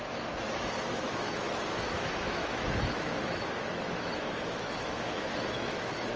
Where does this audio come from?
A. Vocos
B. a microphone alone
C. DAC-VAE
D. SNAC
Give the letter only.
C